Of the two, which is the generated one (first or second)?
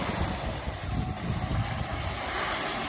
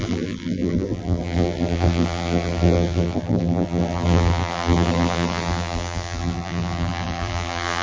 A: second